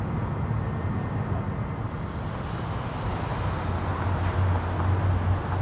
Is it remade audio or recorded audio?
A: recorded